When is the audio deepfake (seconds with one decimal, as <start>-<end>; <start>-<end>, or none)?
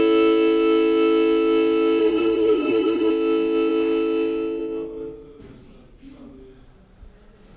2.0-3.1